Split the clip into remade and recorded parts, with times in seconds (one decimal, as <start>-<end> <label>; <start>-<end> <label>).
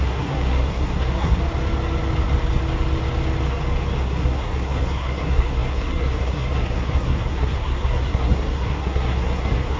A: 0.0-1.4 remade; 1.4-4.0 recorded; 4.0-9.8 remade